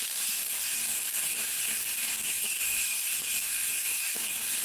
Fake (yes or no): yes